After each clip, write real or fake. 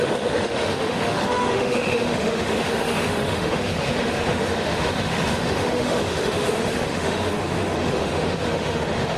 fake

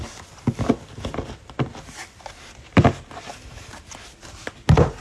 real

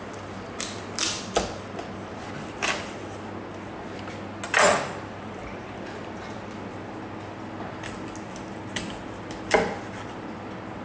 real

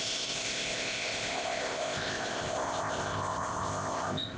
fake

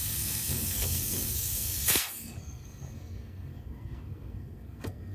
fake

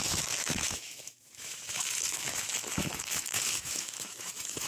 fake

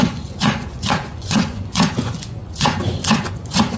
fake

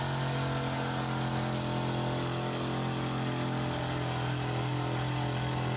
real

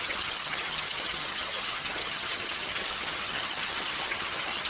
fake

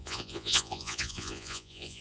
fake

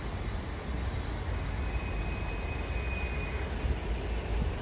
real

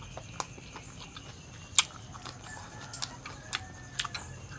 real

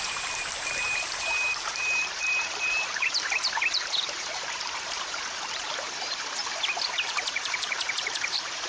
fake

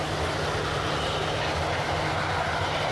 real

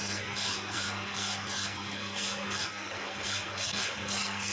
fake